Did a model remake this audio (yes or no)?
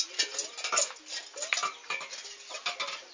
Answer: no